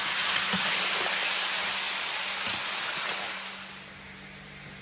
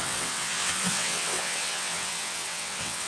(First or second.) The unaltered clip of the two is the first